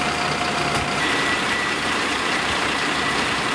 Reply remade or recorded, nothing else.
remade